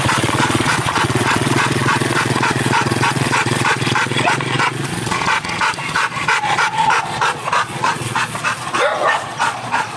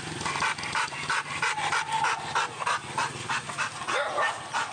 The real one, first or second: second